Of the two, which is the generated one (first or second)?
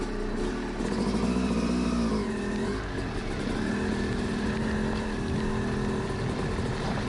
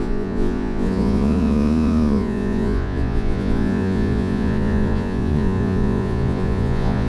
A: second